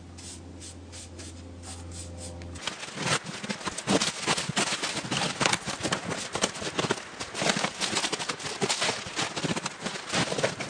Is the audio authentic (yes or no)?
yes